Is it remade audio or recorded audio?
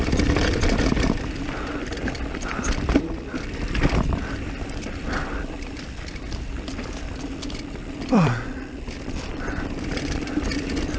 remade